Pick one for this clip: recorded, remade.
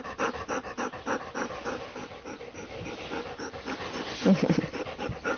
recorded